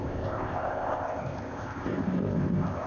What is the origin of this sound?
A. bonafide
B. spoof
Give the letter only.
B